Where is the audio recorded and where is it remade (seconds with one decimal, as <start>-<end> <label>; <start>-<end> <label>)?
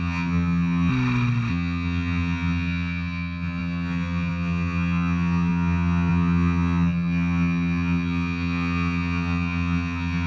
0.0-0.9 remade; 0.9-1.5 recorded; 1.5-10.3 remade